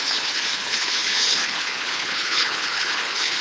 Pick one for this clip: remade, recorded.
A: remade